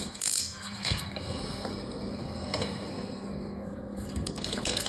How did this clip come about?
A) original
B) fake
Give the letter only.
B